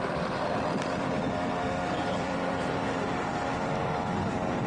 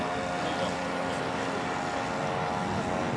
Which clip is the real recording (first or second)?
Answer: second